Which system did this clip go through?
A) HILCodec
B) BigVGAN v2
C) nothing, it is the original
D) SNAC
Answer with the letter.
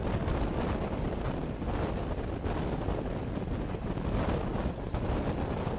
C